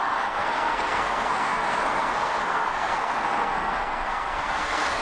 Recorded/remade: remade